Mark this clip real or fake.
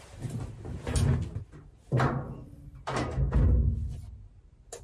real